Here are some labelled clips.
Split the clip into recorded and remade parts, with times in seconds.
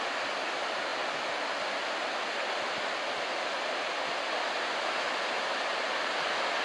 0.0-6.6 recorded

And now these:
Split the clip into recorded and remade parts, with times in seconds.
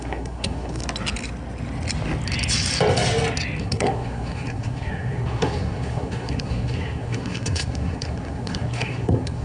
0.0-0.8 remade; 0.8-3.6 recorded; 3.6-9.4 remade